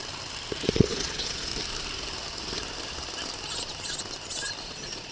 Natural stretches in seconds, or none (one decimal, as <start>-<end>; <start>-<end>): 0.0-0.7; 1.5-4.6